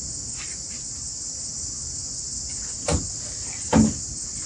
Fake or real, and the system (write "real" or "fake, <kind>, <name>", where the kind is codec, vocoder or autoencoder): real